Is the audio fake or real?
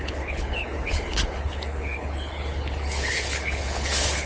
fake